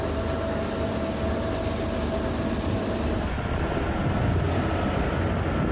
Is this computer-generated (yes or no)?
no